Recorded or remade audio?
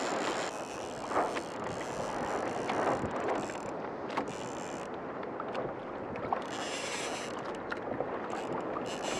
recorded